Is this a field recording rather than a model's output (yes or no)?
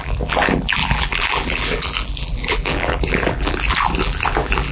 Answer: no